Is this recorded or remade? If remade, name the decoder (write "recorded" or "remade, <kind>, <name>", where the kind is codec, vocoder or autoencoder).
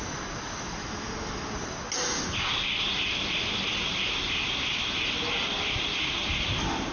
recorded